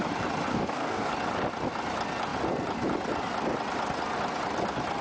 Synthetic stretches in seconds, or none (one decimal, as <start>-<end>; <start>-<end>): 0.5-1.1